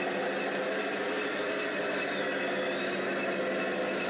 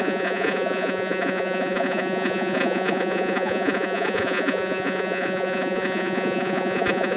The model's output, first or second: second